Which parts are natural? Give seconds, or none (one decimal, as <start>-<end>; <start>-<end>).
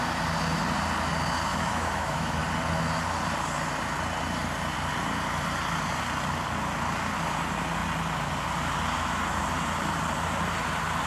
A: 0.0-1.5; 2.4-11.1